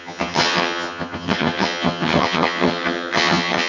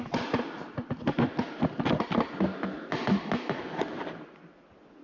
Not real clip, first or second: first